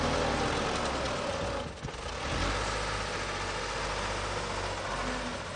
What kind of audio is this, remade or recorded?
recorded